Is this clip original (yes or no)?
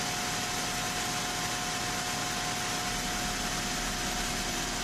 yes